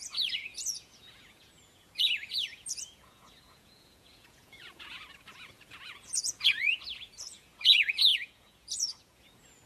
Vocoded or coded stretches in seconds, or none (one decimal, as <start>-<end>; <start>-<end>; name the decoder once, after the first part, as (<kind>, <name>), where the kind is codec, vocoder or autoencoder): 0.0-9.7 (vocoder, Vocos)